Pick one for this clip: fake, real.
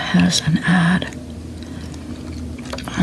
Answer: real